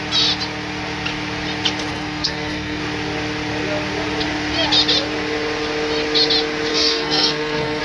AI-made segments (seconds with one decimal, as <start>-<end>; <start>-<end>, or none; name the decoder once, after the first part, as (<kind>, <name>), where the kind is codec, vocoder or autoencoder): 1.9-2.8 (codec, SNAC); 6.7-7.8